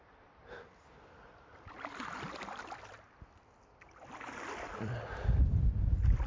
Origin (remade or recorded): remade